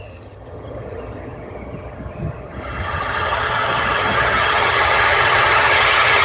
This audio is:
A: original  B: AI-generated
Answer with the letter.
B